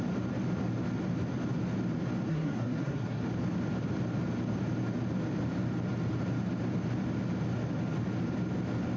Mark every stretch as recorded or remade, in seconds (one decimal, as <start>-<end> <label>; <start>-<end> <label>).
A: 0.0-2.3 recorded; 2.3-3.2 remade; 3.2-9.0 recorded